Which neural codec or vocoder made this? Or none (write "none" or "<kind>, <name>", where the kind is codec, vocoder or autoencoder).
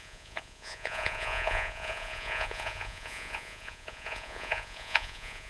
vocoder, Vocos